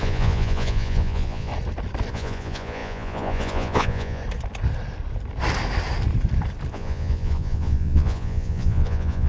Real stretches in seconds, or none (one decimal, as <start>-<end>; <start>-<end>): 1.5-2.1; 4.2-6.7

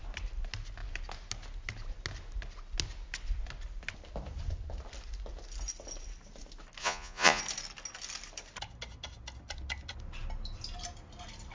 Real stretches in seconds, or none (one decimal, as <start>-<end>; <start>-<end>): 0.0-6.8; 7.4-11.5